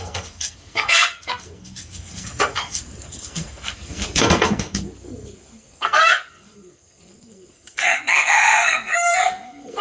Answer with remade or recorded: remade